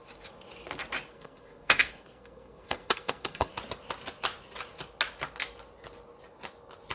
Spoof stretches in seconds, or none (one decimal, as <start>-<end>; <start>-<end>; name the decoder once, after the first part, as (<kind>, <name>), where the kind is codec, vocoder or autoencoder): 1.1-3.5 (codec, SNAC)